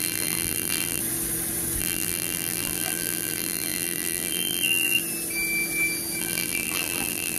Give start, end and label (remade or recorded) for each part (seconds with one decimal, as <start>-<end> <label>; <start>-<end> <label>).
0.0-1.0 remade; 1.0-1.8 recorded; 1.8-5.0 remade; 5.0-6.2 recorded; 6.2-7.4 remade